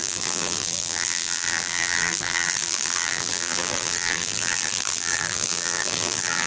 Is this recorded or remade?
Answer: remade